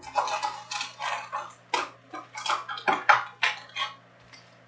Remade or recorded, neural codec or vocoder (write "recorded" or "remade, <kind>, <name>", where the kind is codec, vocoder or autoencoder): recorded